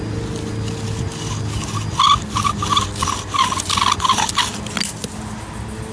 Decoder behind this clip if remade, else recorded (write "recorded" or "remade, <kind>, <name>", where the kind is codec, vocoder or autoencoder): recorded